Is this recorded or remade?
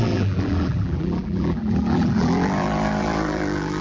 remade